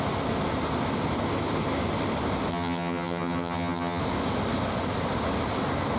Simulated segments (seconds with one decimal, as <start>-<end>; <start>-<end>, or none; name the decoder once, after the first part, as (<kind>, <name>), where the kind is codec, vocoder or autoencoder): 2.5-4.0 (vocoder, HiFi-GAN)